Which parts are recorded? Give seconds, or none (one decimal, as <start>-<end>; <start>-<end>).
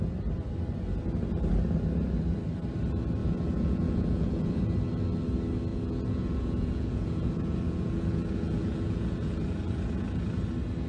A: 0.0-3.2; 4.6-5.7; 10.3-10.9